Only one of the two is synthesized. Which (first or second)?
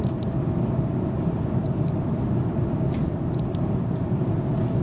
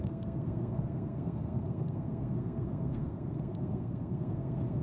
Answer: second